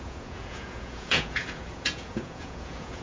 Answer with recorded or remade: remade